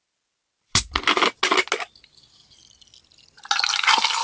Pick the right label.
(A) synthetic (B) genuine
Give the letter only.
B